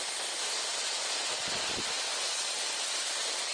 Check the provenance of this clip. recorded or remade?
recorded